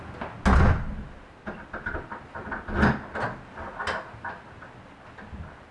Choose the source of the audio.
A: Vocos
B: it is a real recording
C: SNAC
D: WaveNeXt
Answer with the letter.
B